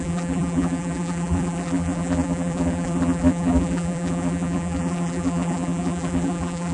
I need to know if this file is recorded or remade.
remade